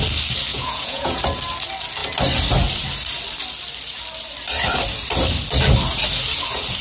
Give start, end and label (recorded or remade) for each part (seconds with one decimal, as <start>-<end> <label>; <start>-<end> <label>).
0.0-0.5 recorded; 0.5-1.2 remade; 1.2-6.8 recorded